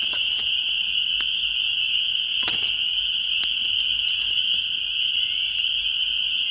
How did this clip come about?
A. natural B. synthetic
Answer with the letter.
A